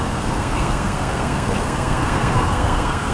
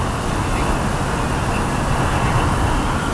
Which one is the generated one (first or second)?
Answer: first